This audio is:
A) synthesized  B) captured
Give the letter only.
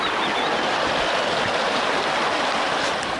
B